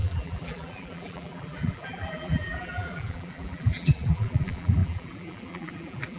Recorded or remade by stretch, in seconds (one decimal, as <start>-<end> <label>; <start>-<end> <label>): 0.0-6.2 remade